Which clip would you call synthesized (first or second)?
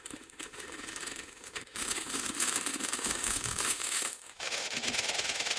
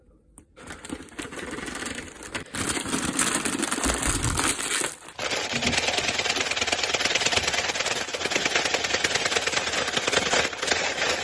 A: first